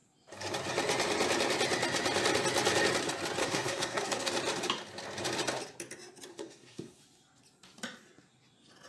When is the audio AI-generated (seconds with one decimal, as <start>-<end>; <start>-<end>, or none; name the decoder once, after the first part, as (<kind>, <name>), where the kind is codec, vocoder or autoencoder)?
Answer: 3.4-4.3 (codec, SNAC); 6.3-7.0